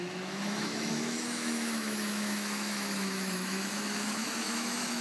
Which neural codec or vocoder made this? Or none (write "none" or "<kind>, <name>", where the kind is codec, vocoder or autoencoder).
autoencoder, DAC-VAE